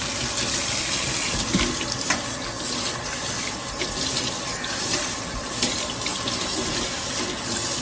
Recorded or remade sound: recorded